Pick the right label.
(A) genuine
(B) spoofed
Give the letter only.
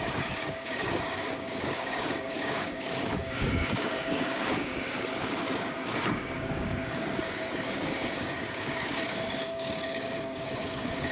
B